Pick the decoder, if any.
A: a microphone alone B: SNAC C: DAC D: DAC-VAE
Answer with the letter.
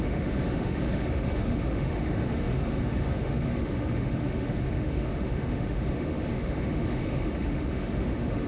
D